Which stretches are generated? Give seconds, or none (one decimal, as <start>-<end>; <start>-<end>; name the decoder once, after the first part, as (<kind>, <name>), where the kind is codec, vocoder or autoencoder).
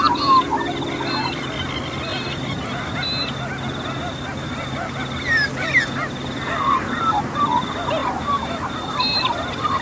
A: 6.0-7.0 (vocoder, BigVGAN v2); 8.0-9.8